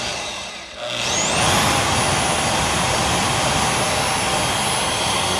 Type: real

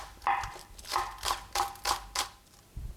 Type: real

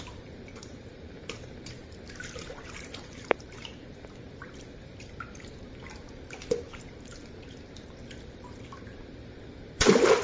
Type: fake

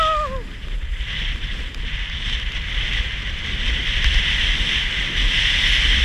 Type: real